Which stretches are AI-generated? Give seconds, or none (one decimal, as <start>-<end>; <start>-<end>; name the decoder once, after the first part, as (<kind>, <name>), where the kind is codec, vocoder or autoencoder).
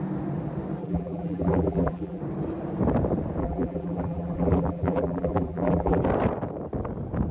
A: 0.8-2.2 (vocoder, BigVGAN v2); 3.4-6.0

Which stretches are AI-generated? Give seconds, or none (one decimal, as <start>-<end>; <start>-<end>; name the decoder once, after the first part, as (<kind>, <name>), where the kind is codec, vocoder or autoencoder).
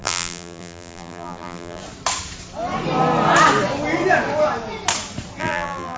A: 0.0-1.8 (vocoder, BigVGAN v2); 5.4-6.0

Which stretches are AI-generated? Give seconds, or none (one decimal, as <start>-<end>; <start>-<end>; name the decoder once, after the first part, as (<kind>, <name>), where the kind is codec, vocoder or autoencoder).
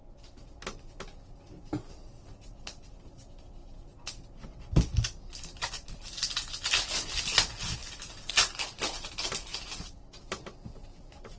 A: none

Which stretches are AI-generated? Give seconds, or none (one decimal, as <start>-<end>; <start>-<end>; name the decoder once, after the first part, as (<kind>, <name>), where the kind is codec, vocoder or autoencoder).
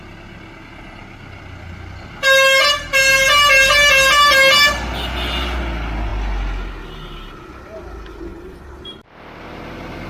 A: 8.3-8.8 (vocoder, BigVGAN v2)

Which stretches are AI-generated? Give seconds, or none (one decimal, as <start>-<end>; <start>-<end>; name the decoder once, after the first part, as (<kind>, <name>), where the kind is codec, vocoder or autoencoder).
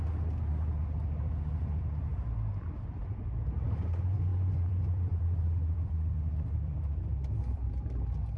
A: 2.1-2.7 (vocoder, BigVGAN v2); 4.3-7.7